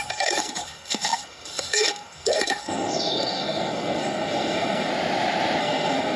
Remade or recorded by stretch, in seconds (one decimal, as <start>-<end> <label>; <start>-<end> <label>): 0.0-4.9 remade; 4.9-5.6 recorded; 5.6-6.2 remade